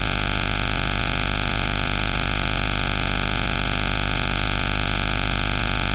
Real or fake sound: fake